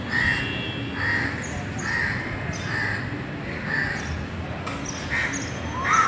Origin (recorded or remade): recorded